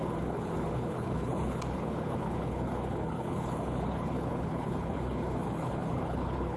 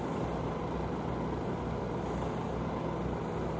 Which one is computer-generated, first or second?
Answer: first